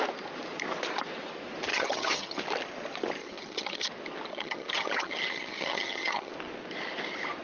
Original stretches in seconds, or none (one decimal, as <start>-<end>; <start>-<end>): 0.0-1.7; 2.4-3.2; 3.9-4.3; 6.3-7.4